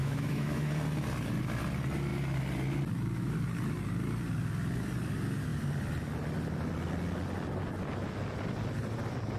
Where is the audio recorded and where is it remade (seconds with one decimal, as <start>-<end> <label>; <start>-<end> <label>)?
0.0-0.7 remade; 0.7-9.4 recorded